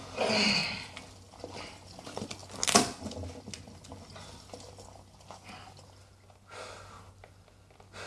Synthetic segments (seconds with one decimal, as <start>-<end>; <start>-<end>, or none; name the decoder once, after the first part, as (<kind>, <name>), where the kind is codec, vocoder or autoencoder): none